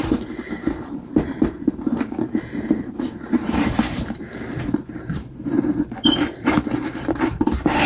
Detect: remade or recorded remade